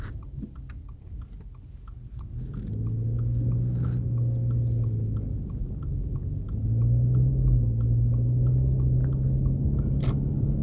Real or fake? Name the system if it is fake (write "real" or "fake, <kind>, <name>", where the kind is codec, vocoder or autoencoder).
real